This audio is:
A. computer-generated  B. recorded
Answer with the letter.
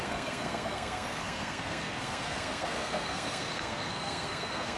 A